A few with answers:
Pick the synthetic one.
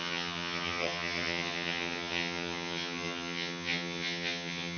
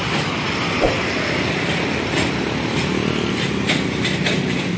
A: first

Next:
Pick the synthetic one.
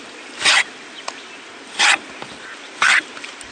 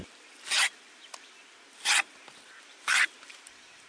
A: first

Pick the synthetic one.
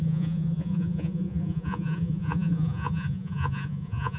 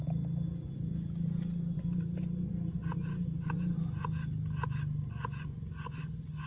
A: first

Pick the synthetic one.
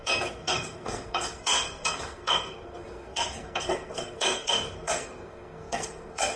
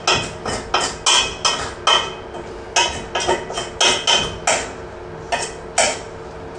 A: first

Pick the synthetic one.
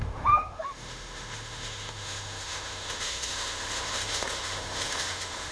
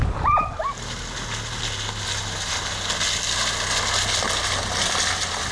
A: first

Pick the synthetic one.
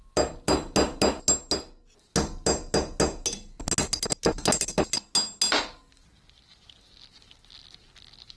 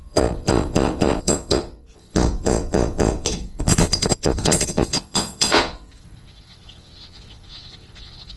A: second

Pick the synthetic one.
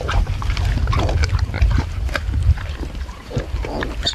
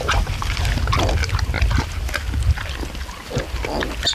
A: first